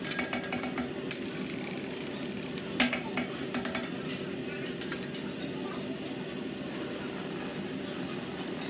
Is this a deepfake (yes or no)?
no